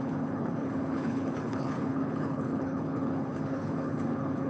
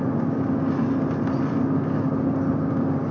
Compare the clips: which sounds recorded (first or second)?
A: second